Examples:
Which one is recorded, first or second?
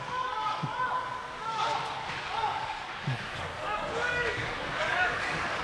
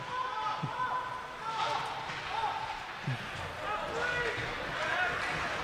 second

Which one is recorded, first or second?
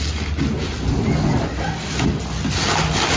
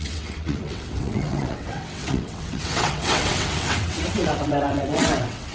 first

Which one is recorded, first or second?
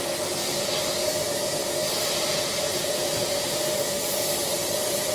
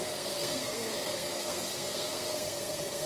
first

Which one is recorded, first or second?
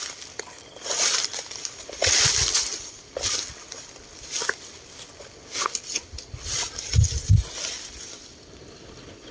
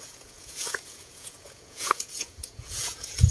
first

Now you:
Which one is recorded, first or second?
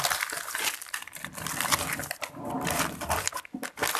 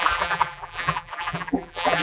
first